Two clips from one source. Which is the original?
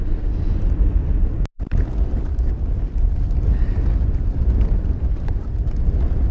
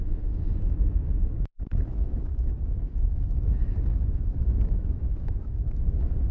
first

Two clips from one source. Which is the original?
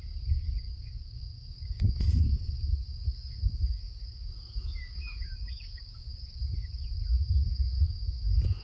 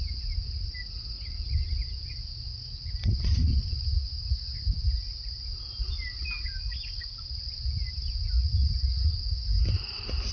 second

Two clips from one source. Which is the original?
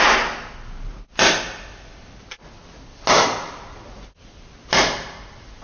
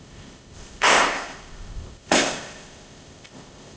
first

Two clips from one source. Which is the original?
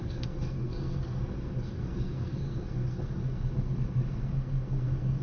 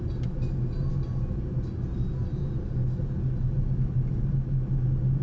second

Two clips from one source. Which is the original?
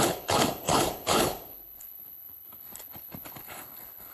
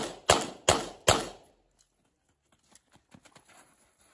second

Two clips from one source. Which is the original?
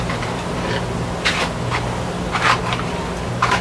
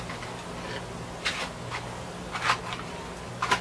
second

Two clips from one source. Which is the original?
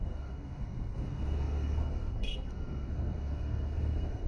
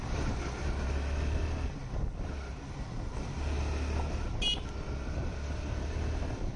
second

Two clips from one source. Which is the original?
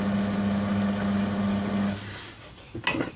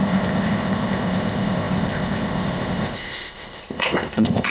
first